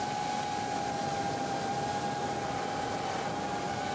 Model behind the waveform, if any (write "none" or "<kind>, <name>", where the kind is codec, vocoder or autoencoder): none